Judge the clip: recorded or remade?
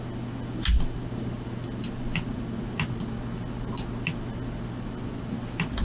recorded